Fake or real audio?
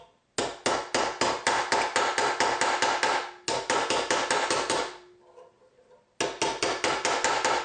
real